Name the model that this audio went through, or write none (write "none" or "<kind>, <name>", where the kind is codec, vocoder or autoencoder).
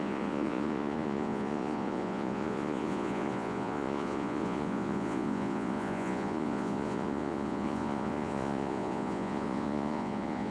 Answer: vocoder, Vocos